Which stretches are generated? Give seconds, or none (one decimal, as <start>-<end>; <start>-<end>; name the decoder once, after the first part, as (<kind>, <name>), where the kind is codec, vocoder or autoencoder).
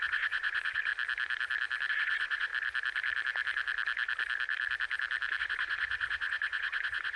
0.0-0.9 (vocoder, Vocos); 1.9-2.5; 5.4-7.2